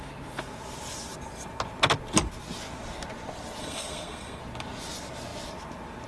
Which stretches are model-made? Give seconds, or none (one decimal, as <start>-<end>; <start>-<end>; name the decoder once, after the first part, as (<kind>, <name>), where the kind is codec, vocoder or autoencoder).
3.6-4.4 (codec, SNAC)